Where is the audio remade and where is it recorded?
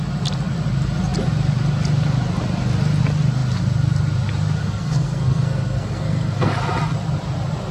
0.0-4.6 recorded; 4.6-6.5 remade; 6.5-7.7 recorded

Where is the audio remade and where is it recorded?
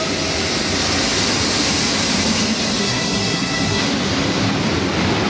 0.0-2.8 recorded; 2.8-3.8 remade; 3.8-5.3 recorded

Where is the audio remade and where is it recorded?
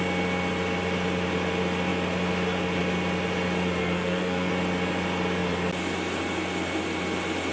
0.0-3.8 recorded; 3.8-4.5 remade; 4.5-7.5 recorded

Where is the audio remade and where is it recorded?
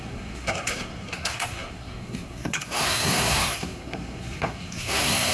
0.0-5.3 remade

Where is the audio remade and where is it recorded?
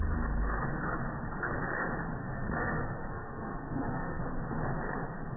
0.0-2.2 recorded; 2.2-4.2 remade; 4.2-5.4 recorded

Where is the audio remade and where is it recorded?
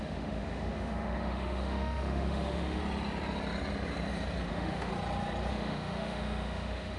0.0-2.8 remade; 2.8-4.5 recorded; 4.5-4.9 remade; 4.9-5.5 recorded; 5.5-7.0 remade